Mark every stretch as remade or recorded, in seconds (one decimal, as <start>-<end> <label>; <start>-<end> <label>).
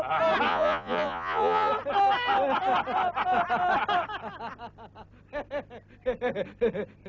0.0-0.5 recorded; 0.5-1.7 remade; 1.7-7.1 recorded